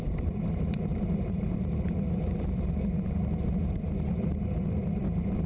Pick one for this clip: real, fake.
fake